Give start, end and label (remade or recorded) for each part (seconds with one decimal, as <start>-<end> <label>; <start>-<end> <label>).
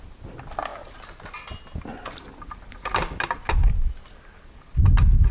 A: 0.0-5.3 recorded